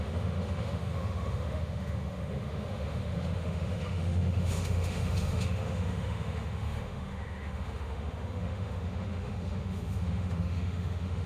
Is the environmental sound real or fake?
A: fake